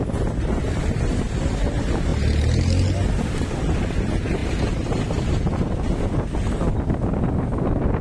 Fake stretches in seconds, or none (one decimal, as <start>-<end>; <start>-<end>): none